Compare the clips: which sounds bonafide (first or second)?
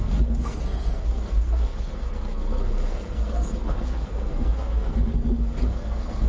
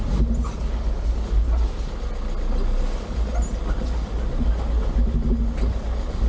second